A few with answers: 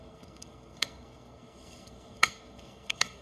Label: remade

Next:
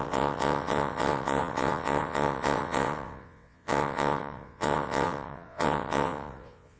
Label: remade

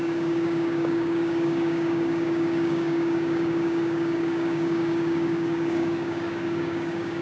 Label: remade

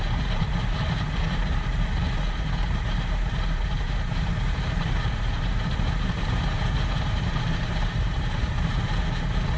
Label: remade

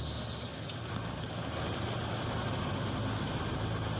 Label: recorded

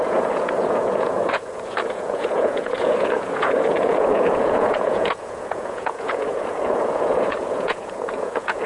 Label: remade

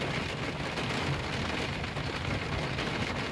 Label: recorded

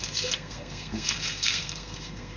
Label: remade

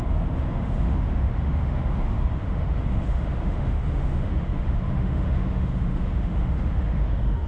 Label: remade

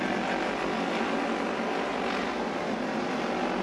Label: recorded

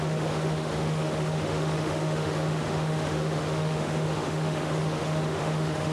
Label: remade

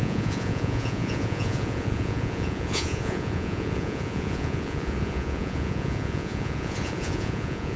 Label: remade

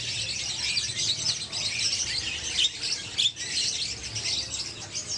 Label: recorded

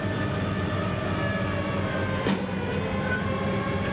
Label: recorded